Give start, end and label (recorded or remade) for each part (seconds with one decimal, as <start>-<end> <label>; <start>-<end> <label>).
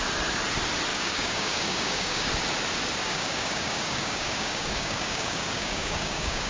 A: 0.0-0.9 recorded; 0.9-2.3 remade; 2.3-3.0 recorded; 3.0-6.5 remade